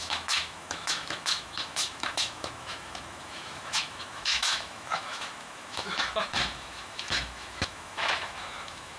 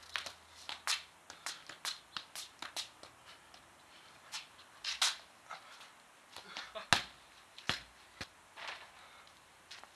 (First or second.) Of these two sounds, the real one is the second